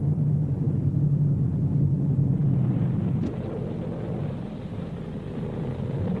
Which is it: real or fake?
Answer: real